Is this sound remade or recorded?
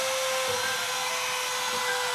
recorded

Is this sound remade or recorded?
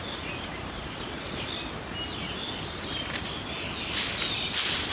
recorded